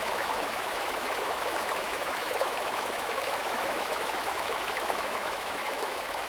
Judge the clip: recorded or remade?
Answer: remade